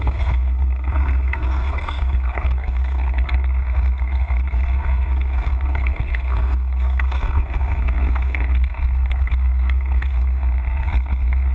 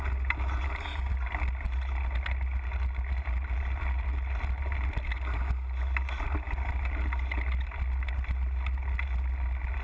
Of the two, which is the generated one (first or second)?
first